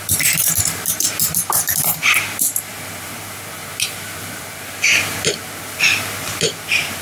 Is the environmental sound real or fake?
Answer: fake